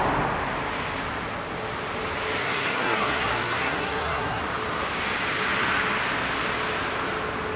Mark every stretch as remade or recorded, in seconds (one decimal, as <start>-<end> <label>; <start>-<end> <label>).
0.0-2.4 recorded; 2.4-4.4 remade; 4.4-7.6 recorded